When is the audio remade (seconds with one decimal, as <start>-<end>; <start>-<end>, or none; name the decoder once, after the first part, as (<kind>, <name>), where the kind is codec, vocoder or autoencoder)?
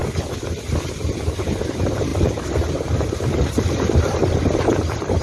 1.5-2.1 (vocoder, BigVGAN v2); 3.0-4.2